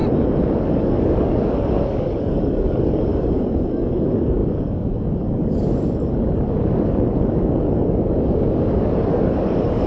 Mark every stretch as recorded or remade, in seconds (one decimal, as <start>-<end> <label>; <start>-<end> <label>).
0.0-0.6 recorded; 0.6-9.9 remade